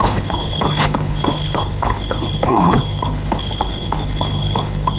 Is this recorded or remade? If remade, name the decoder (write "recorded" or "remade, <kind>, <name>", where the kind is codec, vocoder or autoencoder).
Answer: remade, codec, HILCodec